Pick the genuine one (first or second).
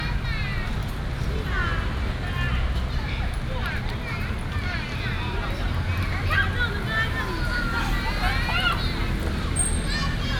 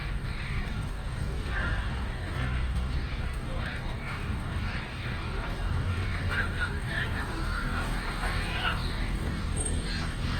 first